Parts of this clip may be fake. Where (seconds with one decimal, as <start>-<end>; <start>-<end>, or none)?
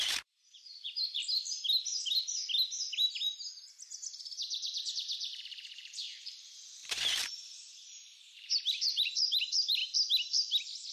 0.0-1.2; 4.9-9.8